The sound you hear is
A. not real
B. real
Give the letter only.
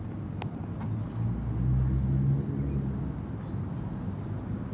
B